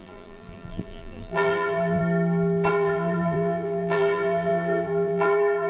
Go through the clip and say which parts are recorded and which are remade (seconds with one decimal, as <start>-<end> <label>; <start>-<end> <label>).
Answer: 0.0-2.0 remade; 2.0-2.7 recorded; 2.7-5.7 remade